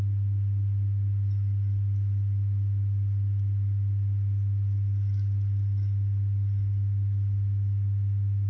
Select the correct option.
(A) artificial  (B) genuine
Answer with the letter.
B